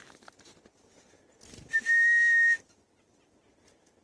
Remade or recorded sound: recorded